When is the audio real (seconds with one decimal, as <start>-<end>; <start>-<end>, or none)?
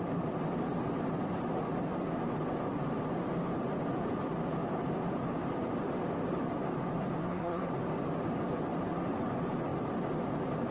0.0-7.2; 7.7-10.7